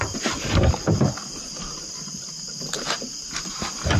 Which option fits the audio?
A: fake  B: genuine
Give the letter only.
A